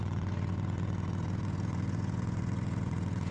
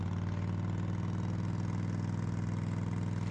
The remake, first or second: first